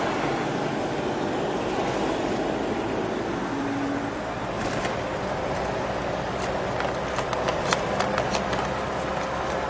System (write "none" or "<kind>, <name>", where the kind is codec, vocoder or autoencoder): none